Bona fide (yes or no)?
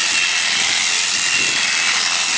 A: yes